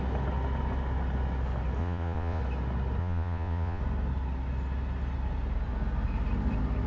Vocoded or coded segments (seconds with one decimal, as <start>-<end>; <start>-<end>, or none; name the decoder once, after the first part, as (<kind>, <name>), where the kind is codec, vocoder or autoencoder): 1.8-2.4 (vocoder, Vocos); 3.0-3.8